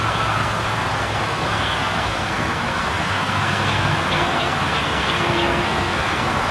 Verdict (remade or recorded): remade